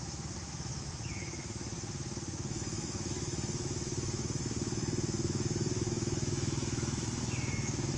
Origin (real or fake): fake